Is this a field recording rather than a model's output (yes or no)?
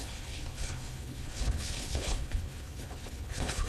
no